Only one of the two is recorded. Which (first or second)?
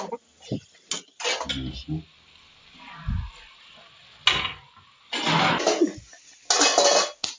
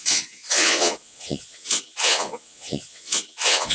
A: first